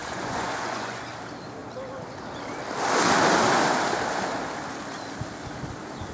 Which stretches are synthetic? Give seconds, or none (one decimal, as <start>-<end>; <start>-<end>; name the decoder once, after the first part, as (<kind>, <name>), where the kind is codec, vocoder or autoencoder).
0.0-1.1 (vocoder, Vocos)

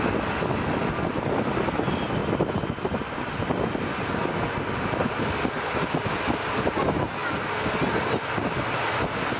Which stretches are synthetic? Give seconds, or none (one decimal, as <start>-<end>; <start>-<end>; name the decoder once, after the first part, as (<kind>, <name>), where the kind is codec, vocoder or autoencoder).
none

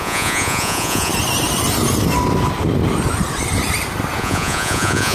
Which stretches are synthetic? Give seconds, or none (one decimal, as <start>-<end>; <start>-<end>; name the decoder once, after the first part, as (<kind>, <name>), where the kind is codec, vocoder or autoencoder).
0.0-1.1 (vocoder, Vocos); 4.2-5.1

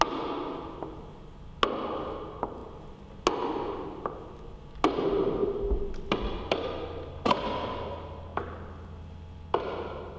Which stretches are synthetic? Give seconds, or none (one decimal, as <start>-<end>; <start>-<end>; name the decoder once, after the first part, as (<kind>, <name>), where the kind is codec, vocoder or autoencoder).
none

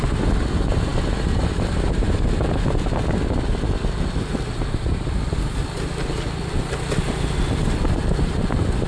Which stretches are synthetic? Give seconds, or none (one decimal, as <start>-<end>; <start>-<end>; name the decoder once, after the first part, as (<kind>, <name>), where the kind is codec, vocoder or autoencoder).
none